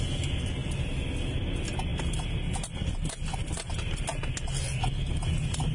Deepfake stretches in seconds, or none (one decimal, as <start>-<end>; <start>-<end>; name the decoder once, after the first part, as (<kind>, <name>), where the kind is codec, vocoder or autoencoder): none